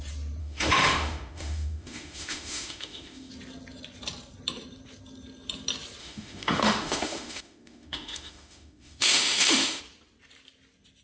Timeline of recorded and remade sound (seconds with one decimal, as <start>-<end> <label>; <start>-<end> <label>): 0.0-0.4 recorded; 0.4-3.3 remade; 3.3-6.0 recorded; 6.0-9.8 remade; 9.8-11.0 recorded